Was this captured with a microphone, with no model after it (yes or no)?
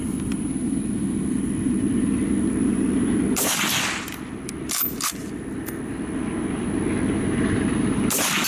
yes